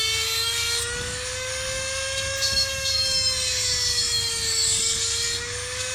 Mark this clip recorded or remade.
remade